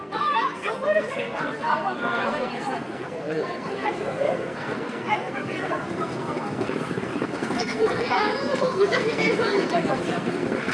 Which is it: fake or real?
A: fake